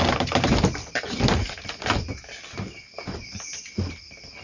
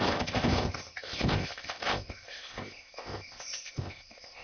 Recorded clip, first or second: first